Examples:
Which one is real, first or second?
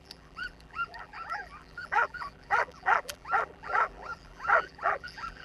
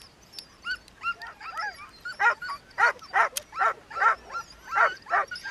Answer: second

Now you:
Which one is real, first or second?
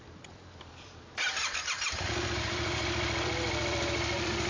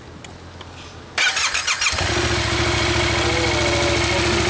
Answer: second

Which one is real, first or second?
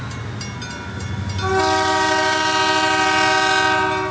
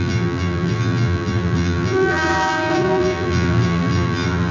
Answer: first